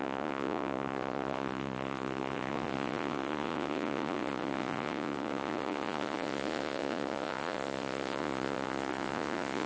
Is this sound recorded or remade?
remade